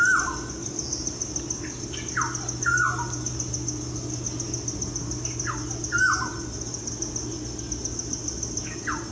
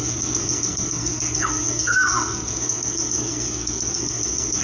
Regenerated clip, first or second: second